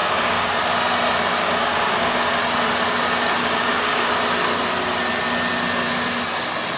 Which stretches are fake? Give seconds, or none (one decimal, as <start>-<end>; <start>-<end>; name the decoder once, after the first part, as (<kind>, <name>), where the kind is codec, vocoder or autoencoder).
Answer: 0.0-0.6 (codec, DAC); 1.4-2.4; 3.4-4.1